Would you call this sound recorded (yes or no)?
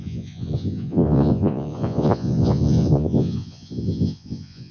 no